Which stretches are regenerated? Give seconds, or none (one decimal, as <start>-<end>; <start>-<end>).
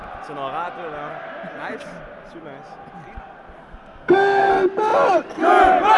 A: 3.6-4.5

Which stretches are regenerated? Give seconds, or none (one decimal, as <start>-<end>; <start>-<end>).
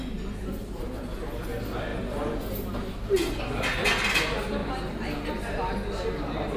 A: none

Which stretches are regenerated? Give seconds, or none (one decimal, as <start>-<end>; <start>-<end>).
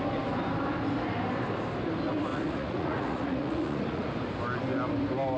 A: 2.3-4.1